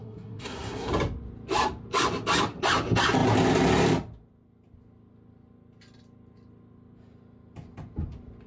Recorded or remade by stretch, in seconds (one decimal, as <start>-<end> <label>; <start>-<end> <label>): 0.0-0.9 remade; 0.9-8.5 recorded